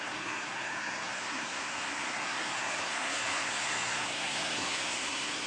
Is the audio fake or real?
fake